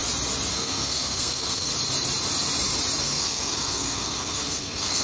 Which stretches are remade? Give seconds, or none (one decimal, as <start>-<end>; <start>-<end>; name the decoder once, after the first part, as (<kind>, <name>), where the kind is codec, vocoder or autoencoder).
0.5-1.7 (codec, SNAC); 3.0-5.0